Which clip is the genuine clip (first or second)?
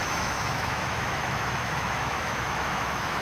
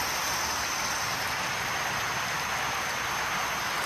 second